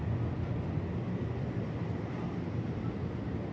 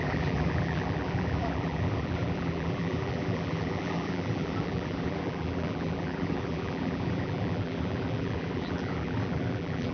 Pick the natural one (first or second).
first